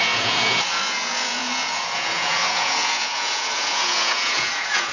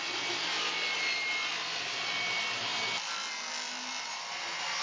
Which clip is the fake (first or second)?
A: first